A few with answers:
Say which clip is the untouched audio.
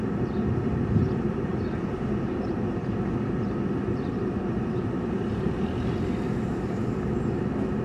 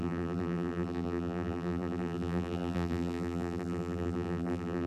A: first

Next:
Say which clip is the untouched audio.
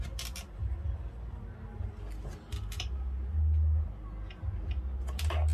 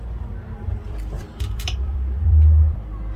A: first